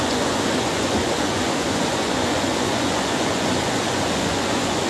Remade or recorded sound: remade